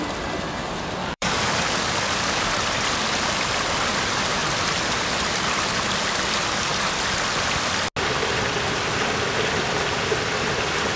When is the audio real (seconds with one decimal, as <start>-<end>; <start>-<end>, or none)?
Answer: 0.0-1.0; 2.5-11.0